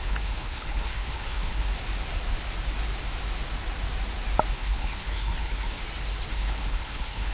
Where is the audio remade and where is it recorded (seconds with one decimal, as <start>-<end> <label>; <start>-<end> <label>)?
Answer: 0.0-1.7 remade; 1.7-4.5 recorded; 4.5-5.8 remade; 5.8-6.3 recorded; 6.3-7.3 remade

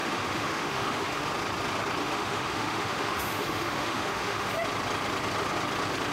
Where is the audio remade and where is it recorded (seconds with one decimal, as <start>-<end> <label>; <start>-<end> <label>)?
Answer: 0.0-1.3 remade; 1.3-2.0 recorded; 2.0-4.5 remade; 4.5-6.1 recorded